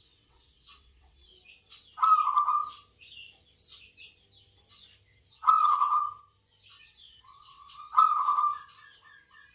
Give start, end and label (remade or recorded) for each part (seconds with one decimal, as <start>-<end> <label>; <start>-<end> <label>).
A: 0.0-1.3 remade; 1.3-5.3 recorded; 5.3-6.0 remade; 6.0-6.8 recorded; 6.8-8.4 remade; 8.4-9.5 recorded